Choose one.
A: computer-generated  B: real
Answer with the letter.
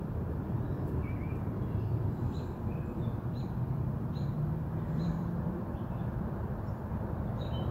A